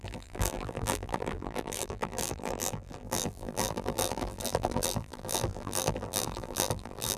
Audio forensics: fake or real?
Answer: fake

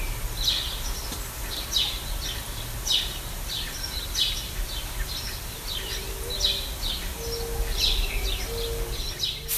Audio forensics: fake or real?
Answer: real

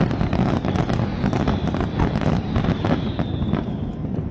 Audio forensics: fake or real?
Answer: real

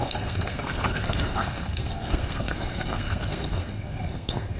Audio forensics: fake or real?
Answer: fake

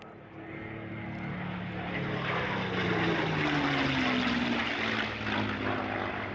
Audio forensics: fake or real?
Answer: real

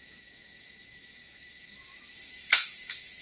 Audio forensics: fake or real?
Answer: fake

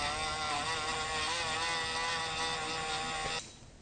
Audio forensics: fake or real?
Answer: real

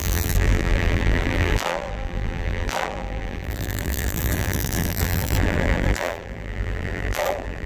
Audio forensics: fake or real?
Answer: fake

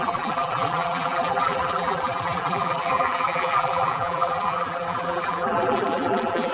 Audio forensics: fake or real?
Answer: fake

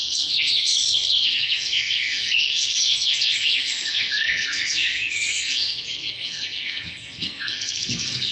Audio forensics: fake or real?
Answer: fake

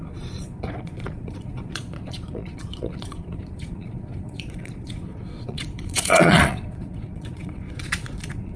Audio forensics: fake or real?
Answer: fake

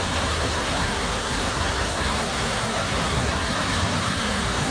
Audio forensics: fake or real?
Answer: fake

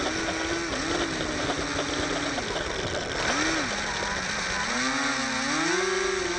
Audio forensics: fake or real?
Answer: real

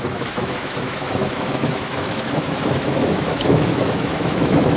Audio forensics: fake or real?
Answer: fake